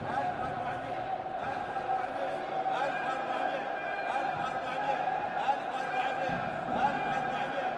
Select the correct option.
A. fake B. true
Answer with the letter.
B